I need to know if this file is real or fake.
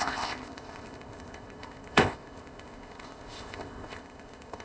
fake